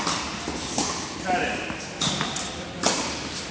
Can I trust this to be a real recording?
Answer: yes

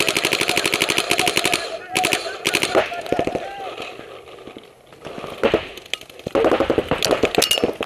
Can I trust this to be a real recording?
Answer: yes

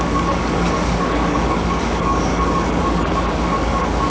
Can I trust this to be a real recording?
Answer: no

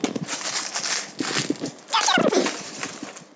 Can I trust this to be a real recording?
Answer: yes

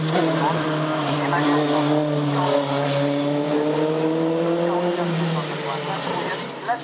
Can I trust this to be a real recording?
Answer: yes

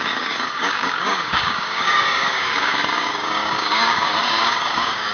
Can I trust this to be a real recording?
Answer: no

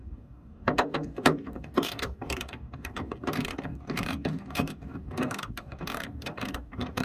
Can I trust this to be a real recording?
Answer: no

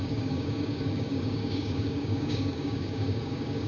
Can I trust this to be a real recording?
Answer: no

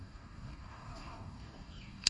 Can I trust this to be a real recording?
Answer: no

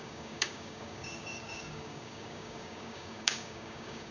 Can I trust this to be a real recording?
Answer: no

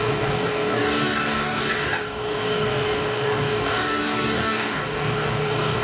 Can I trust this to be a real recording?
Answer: no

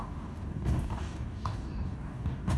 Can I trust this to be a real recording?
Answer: no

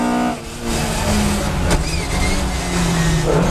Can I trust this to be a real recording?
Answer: yes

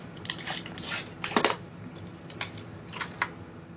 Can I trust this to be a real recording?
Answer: yes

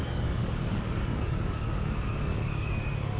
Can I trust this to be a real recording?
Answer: no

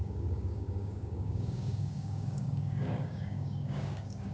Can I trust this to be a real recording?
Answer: no